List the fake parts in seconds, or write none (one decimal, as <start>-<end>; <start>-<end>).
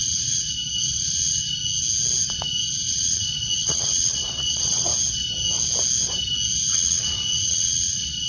0.0-1.4; 2.3-4.9; 6.7-8.3